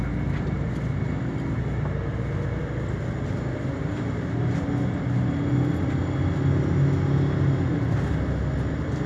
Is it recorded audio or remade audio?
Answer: recorded